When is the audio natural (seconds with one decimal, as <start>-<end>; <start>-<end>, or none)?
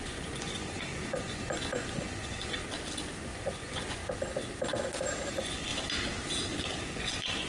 2.6-3.3; 4.0-5.3; 5.7-6.8